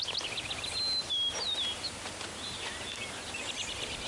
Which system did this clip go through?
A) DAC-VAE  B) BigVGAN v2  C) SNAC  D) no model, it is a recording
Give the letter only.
D